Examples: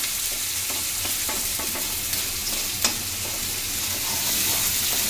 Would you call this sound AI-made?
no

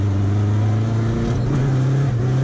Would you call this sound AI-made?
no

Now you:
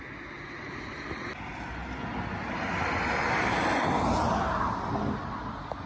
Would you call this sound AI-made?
no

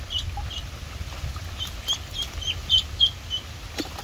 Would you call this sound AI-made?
no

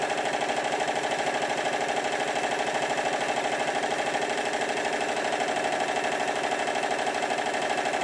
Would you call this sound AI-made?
no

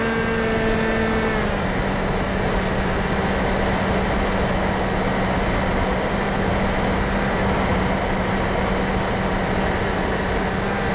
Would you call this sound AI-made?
no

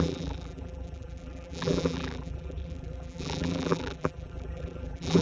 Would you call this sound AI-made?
yes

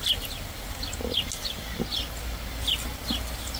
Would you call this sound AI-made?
no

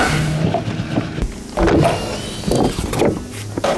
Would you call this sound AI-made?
no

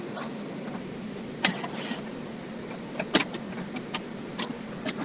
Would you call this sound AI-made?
no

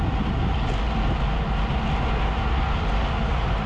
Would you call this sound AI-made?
no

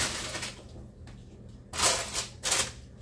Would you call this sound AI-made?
no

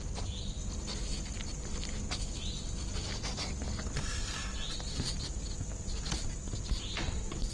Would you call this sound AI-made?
no